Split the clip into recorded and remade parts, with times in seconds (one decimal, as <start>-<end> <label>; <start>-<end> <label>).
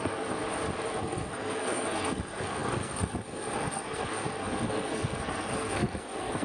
0.0-0.4 remade; 0.4-1.0 recorded; 1.0-6.4 remade